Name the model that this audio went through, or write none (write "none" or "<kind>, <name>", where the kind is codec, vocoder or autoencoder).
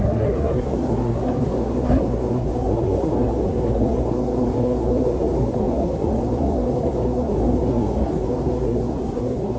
codec, SNAC